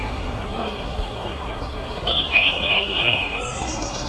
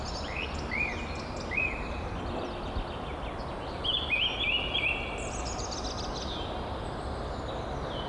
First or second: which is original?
second